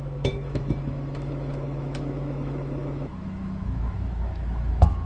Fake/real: fake